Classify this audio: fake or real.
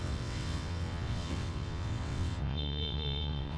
fake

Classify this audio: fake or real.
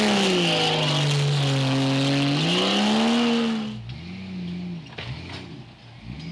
real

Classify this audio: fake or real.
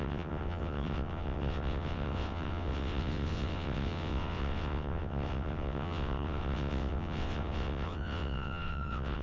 fake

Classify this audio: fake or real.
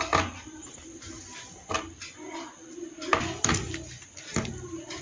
real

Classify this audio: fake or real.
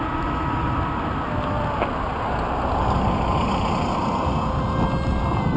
real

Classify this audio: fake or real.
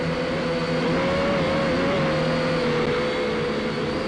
real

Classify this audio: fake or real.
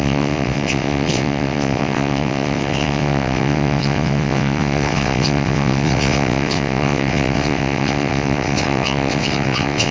fake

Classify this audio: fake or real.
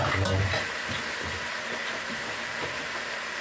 real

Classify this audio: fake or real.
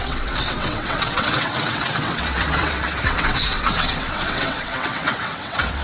fake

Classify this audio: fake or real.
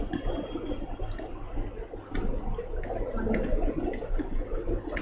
real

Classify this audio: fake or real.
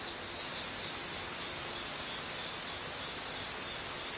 real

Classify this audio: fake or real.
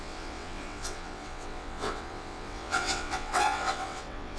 fake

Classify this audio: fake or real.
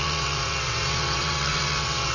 fake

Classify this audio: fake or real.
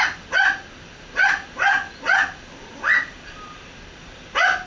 real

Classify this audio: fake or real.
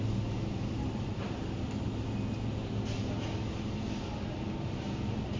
real